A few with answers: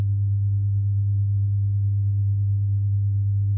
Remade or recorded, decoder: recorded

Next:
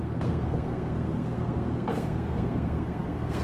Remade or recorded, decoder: remade, codec, SNAC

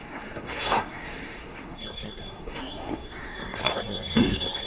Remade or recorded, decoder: remade, codec, SNAC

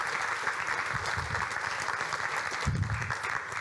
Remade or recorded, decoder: recorded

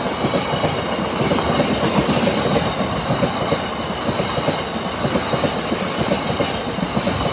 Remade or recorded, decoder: recorded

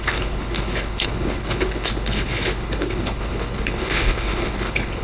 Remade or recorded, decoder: remade, codec, HILCodec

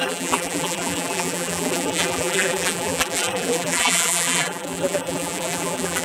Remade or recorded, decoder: remade, vocoder, BigVGAN v2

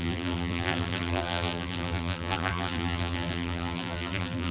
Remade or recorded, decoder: remade, vocoder, BigVGAN v2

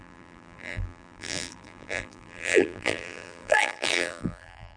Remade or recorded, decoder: remade, vocoder, BigVGAN v2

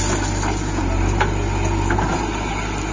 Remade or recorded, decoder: recorded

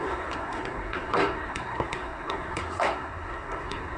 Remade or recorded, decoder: remade, codec, SNAC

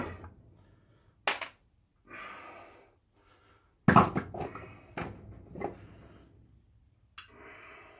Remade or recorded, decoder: recorded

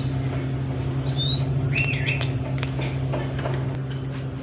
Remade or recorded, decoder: recorded